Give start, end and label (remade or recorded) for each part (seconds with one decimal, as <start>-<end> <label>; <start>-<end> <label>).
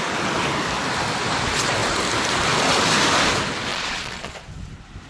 0.0-3.7 recorded; 3.7-4.3 remade; 4.3-5.1 recorded